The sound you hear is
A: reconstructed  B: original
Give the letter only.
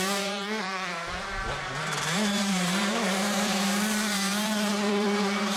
A